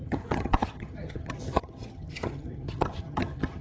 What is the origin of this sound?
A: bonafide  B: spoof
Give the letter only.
B